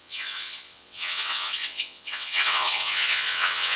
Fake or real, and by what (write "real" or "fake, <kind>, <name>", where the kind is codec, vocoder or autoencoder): fake, vocoder, WaveNeXt